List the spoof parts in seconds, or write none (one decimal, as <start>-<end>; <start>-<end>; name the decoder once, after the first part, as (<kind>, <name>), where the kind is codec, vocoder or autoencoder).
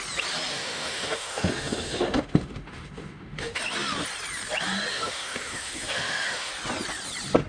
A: 0.5-3.6 (autoencoder, DAC-VAE); 4.9-6.5